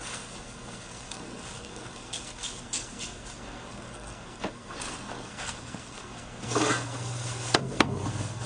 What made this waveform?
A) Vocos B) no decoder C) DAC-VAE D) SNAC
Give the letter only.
D